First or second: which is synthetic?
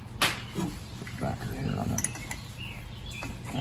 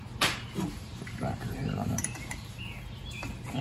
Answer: second